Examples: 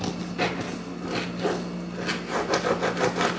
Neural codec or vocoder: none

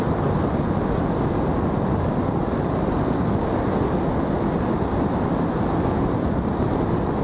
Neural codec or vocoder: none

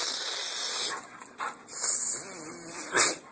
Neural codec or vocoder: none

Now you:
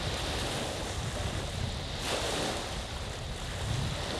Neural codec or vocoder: none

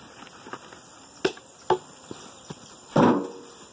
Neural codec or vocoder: none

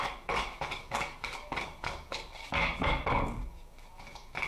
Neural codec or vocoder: codec, DAC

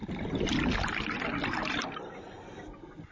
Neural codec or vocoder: none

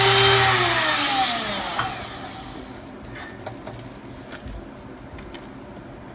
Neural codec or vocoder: none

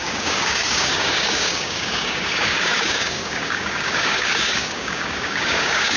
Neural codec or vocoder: codec, DAC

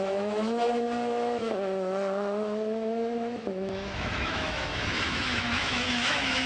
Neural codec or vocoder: autoencoder, DAC-VAE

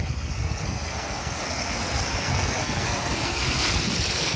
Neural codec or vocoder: codec, SNAC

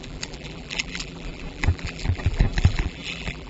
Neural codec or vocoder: vocoder, BigVGAN v2